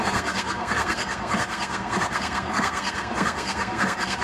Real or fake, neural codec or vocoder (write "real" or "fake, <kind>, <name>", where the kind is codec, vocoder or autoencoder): fake, codec, SNAC